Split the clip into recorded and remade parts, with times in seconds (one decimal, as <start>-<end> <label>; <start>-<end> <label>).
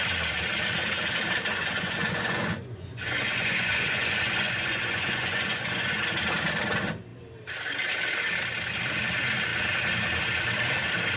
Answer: 0.0-1.6 recorded; 1.6-6.0 remade; 6.0-11.2 recorded